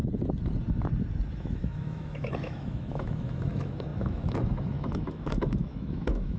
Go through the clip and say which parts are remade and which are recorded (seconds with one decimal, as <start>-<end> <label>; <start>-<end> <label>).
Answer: 0.0-1.3 recorded; 1.3-6.4 remade